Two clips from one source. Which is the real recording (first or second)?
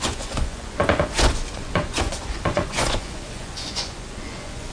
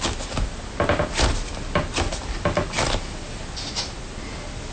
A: second